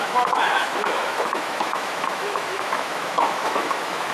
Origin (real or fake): fake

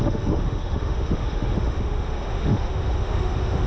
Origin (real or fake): fake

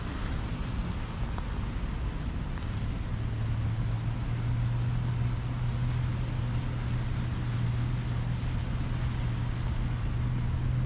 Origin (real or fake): real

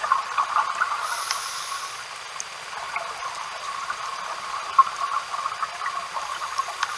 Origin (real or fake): real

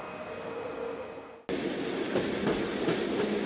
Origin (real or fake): real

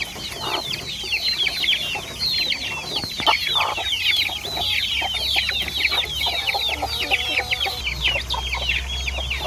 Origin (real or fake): real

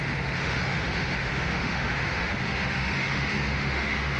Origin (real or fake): fake